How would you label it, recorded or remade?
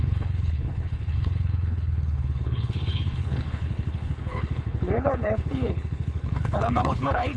remade